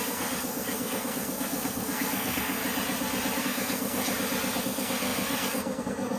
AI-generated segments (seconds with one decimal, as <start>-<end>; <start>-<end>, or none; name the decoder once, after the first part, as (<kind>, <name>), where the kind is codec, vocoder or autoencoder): 0.0-2.6 (codec, SNAC); 3.4-4.0; 4.6-6.2